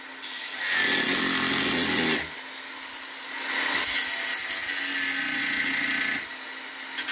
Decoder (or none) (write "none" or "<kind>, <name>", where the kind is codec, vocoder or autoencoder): none